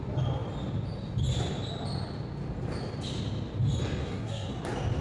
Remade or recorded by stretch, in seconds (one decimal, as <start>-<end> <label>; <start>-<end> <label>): 0.0-4.0 recorded; 4.0-4.5 remade; 4.5-5.0 recorded